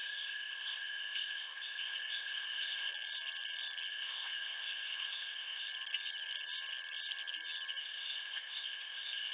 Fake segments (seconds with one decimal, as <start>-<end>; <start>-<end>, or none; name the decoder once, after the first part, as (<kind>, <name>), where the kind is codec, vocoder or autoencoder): 0.0-2.9 (codec, ZipCodec); 3.9-5.7; 7.8-9.3